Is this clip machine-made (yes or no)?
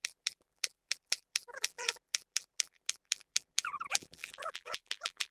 yes